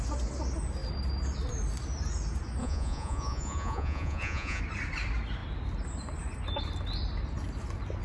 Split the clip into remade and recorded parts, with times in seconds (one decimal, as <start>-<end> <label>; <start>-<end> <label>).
0.0-2.6 recorded; 2.6-4.6 remade; 4.6-8.0 recorded